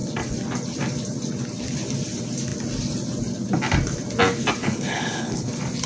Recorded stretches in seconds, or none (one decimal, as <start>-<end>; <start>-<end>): 0.0-4.6; 5.5-5.9